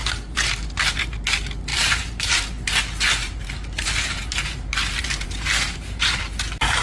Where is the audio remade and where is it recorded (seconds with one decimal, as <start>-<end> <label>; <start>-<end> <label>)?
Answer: 0.0-1.2 remade; 1.2-1.7 recorded; 1.7-2.7 remade; 2.7-3.2 recorded; 3.2-6.2 remade; 6.2-6.8 recorded

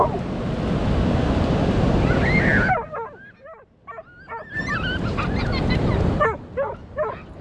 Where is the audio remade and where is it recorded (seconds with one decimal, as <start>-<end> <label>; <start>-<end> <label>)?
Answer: 0.0-7.4 recorded

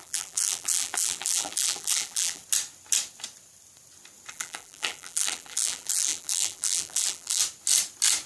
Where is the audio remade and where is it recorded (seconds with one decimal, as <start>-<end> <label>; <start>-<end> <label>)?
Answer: 0.0-2.4 remade; 2.4-4.3 recorded; 4.3-7.4 remade; 7.4-8.3 recorded